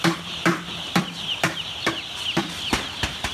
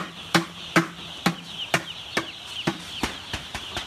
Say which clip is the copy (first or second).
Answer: first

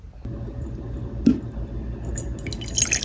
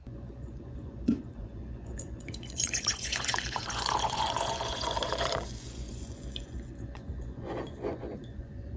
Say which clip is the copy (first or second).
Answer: second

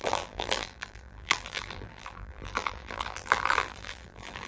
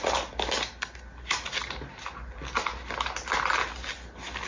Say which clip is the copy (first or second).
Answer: first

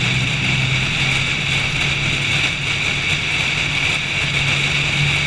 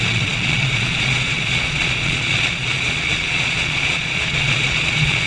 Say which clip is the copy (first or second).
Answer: second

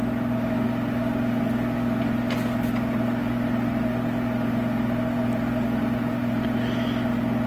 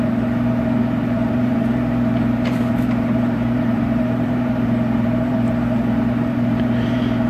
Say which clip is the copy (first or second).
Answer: second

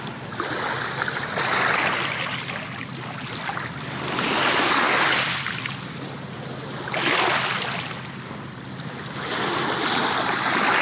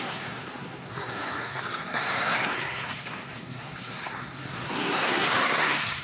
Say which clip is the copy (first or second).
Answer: second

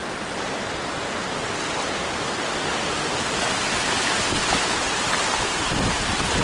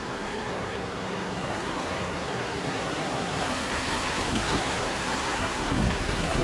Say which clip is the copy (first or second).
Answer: second